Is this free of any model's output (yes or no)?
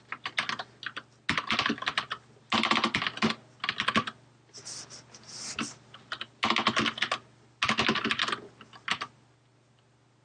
yes